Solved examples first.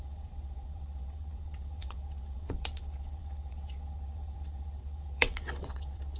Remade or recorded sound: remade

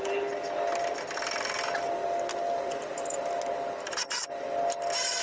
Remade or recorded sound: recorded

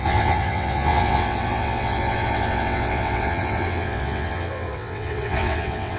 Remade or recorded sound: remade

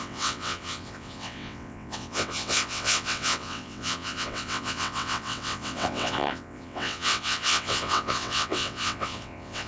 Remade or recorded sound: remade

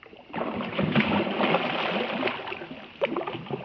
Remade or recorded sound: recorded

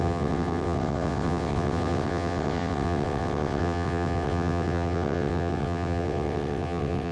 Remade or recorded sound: remade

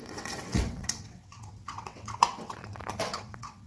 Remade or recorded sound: remade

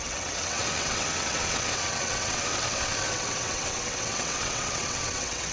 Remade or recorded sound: remade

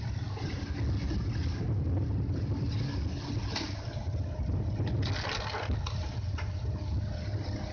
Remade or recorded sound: recorded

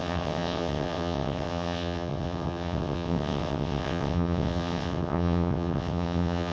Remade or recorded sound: remade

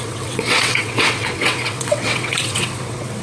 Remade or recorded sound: remade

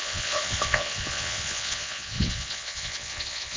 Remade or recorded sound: remade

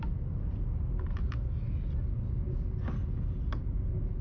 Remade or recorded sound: recorded